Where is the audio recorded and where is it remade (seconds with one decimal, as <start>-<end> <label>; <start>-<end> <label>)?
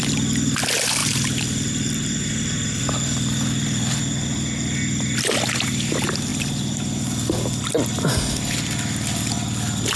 0.0-1.0 recorded; 1.0-2.8 remade; 2.8-10.0 recorded